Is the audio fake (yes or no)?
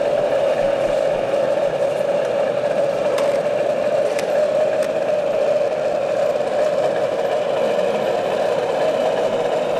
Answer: no